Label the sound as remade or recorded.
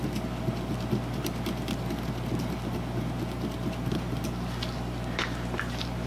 recorded